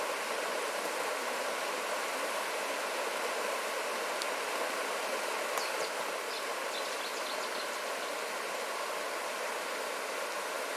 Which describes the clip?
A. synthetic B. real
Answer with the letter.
B